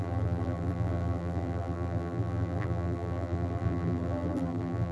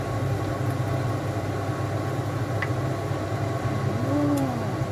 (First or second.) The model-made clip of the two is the first